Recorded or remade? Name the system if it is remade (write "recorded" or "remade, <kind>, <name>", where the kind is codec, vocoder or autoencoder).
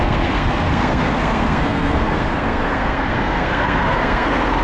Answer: remade, codec, SNAC